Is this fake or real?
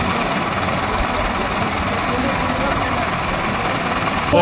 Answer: real